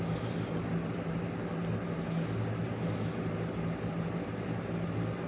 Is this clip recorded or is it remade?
recorded